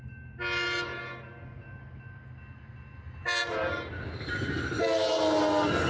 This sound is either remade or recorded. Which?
recorded